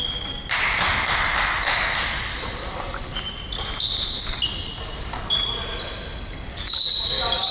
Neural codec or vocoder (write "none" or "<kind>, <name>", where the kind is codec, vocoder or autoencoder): none